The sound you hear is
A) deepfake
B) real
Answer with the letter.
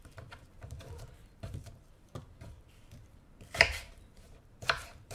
A